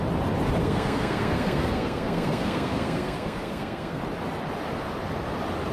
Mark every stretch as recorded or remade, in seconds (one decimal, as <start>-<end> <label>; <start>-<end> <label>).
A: 0.0-0.6 recorded; 0.6-4.0 remade; 4.0-5.7 recorded